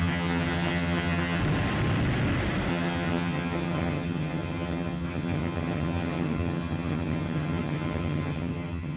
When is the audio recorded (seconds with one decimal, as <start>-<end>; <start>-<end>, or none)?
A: 1.4-2.7